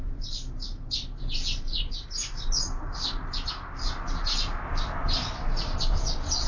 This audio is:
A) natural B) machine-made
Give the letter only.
B